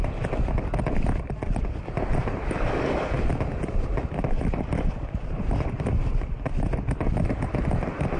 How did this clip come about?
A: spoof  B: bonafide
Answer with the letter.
B